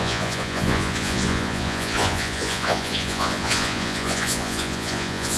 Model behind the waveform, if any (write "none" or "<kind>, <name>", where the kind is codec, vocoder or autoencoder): vocoder, Vocos